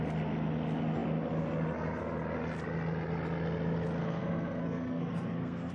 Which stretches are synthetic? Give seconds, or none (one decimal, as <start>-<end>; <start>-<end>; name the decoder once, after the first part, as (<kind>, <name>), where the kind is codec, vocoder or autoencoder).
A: 4.0-5.7 (codec, SNAC)